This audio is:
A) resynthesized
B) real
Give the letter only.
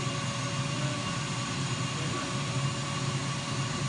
B